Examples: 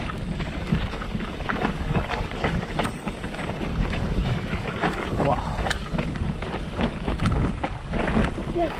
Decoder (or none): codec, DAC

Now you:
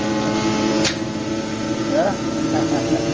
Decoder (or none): none